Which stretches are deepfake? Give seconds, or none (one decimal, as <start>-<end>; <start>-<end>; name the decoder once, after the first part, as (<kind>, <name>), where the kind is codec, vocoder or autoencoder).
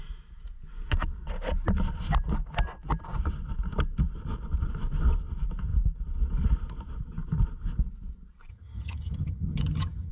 8.5-10.1 (vocoder, HiFi-GAN)